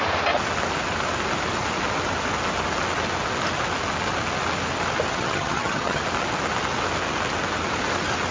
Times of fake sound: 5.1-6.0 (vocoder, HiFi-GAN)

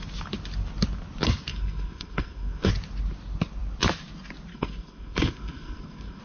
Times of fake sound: 1.5-2.7 (codec, SNAC); 4.5-6.2

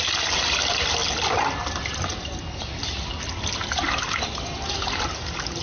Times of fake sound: none

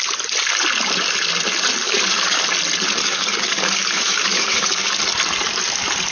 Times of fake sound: 1.8-2.4 (codec, DAC); 3.0-5.0

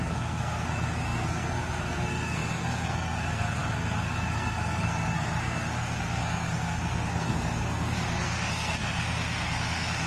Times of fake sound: 0.0-10.1 (codec, SNAC)

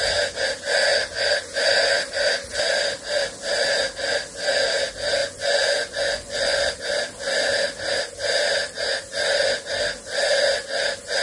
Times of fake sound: 5.2-6.7 (vocoder, Vocos)

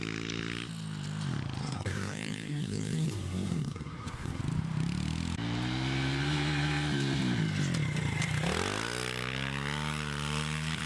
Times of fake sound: 1.6-4.4 (codec, SNAC)